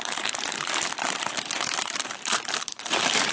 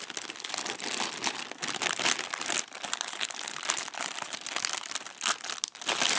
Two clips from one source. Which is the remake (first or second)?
first